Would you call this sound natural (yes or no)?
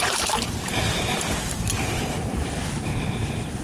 no